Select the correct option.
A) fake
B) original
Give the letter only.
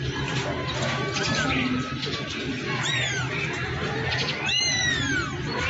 B